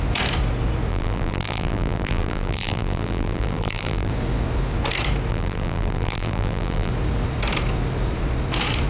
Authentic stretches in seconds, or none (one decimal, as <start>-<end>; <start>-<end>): 0.0-0.9; 4.1-5.3; 6.9-8.9